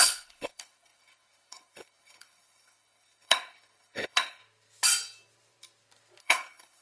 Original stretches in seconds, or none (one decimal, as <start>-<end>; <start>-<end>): 4.4-6.2